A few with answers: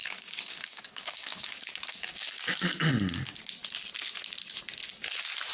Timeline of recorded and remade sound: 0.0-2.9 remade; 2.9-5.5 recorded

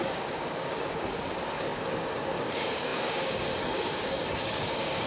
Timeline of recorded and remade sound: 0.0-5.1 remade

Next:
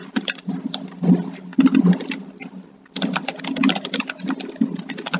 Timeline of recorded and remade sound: 0.0-5.2 recorded

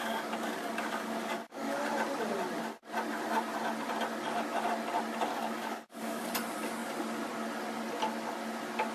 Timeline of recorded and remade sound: 0.0-1.8 remade; 1.8-5.3 recorded; 5.3-6.3 remade; 6.3-8.9 recorded

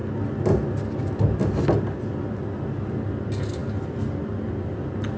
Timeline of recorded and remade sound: 0.0-5.2 recorded

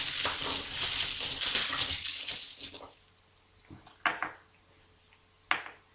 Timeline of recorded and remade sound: 0.0-1.6 recorded; 1.6-3.0 remade; 3.0-5.9 recorded

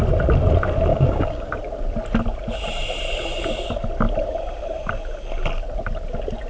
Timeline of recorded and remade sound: 0.0-0.9 recorded; 0.9-1.5 remade; 1.5-6.5 recorded